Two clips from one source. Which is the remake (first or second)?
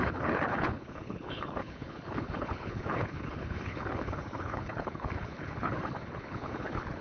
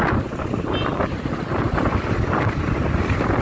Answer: first